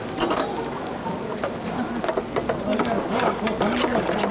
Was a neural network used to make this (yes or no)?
no